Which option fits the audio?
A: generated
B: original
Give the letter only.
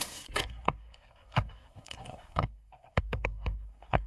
A